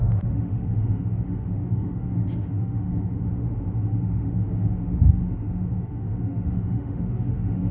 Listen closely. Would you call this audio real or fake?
fake